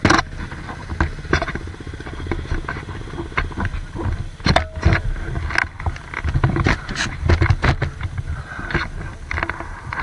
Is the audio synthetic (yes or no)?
no